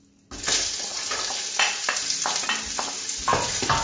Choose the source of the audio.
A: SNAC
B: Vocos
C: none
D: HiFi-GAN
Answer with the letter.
C